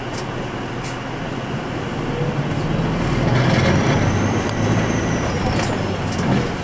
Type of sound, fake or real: real